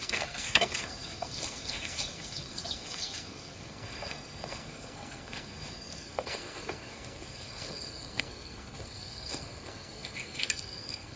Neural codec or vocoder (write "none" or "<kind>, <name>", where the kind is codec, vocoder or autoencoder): codec, SNAC